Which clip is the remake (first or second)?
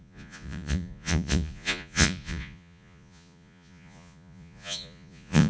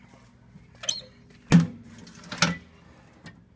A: first